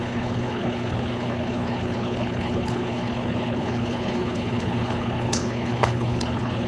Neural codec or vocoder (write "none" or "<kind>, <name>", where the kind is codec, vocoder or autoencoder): codec, HILCodec